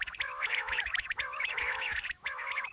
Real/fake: fake